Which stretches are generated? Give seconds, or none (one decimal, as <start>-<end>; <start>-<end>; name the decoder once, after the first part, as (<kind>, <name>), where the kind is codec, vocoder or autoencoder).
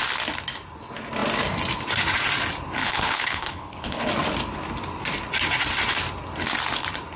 2.8-4.1 (codec, HILCodec)